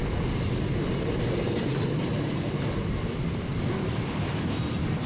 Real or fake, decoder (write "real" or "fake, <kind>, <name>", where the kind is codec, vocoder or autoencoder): real